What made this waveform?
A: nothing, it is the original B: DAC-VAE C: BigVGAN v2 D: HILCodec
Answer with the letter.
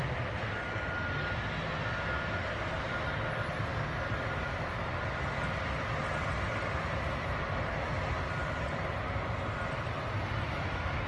A